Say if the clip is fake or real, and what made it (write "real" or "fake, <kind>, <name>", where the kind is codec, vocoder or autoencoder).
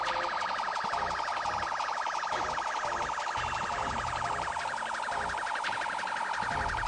real